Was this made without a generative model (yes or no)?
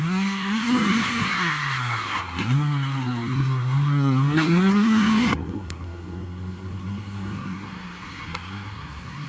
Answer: no